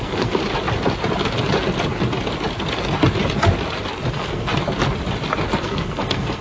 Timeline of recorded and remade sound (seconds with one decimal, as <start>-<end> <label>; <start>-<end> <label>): 0.0-0.4 remade; 0.4-4.1 recorded; 4.1-4.5 remade; 4.5-5.6 recorded; 5.6-6.4 remade